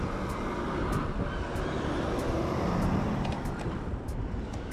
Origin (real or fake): real